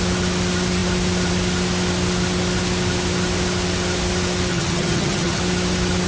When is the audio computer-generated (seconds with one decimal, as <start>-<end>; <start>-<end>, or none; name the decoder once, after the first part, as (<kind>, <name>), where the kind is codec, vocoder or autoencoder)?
4.5-5.4 (vocoder, HiFi-GAN)